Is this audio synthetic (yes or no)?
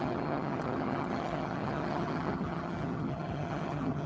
yes